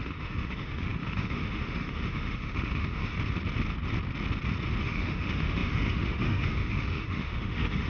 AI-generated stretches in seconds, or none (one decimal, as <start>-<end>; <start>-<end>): 0.0-3.1; 4.8-7.9